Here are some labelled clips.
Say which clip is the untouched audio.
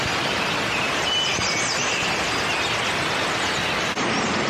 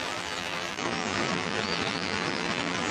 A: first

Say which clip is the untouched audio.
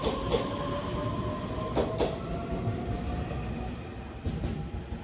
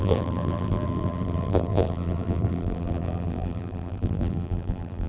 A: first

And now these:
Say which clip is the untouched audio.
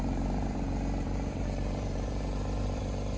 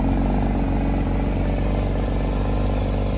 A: second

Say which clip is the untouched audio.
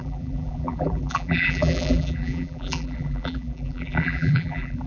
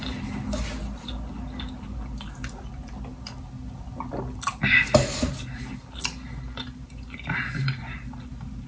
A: second